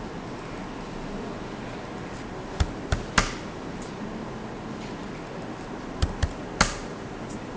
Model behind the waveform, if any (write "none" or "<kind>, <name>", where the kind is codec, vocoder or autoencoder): none